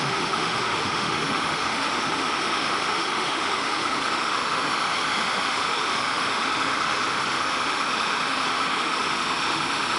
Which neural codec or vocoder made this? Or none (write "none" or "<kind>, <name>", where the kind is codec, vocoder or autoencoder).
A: autoencoder, DAC-VAE